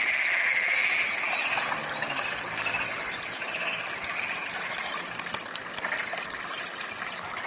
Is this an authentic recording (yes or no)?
yes